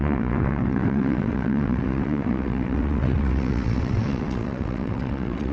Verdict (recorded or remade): remade